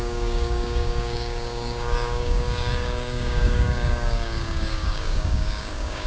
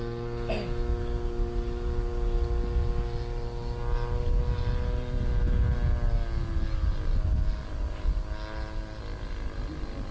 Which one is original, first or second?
second